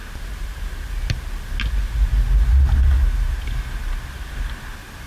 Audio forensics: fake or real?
real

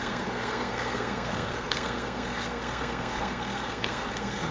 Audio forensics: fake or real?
fake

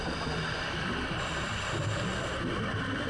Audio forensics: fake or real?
fake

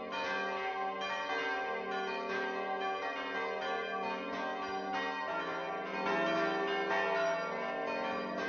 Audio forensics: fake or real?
real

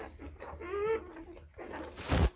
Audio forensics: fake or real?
real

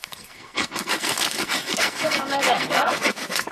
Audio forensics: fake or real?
fake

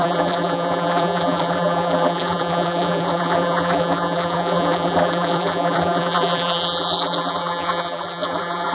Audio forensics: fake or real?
fake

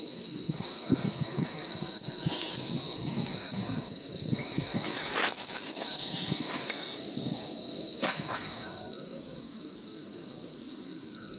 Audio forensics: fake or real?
fake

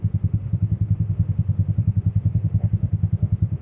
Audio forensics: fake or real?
fake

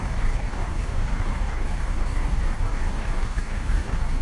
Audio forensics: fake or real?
fake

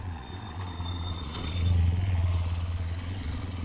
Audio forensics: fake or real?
fake